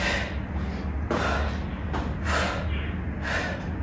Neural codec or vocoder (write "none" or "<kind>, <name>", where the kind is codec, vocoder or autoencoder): none